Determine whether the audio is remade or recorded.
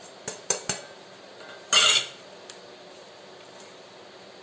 recorded